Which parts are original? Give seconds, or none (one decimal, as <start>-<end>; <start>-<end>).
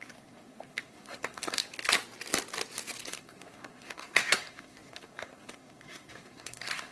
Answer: 1.6-3.1